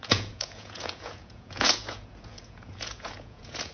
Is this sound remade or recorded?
remade